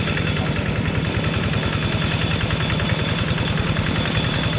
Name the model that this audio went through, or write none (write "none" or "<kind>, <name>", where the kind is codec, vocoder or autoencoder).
none